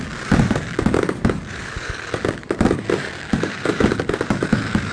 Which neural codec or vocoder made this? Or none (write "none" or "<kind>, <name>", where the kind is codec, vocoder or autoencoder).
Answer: codec, DAC